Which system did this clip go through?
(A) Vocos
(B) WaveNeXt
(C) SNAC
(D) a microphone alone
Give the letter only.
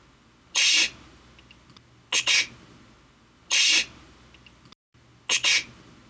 D